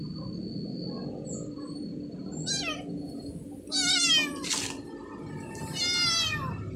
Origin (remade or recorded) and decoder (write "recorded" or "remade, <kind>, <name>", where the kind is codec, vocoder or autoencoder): recorded